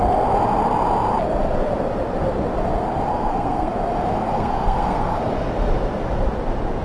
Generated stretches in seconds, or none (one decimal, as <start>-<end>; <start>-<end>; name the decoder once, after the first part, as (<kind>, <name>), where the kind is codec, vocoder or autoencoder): 3.1-3.7 (codec, SNAC); 4.2-5.2